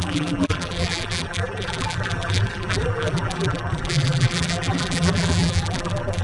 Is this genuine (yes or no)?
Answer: no